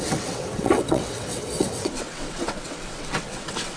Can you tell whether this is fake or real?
fake